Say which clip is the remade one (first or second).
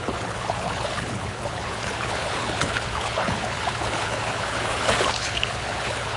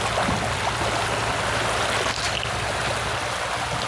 first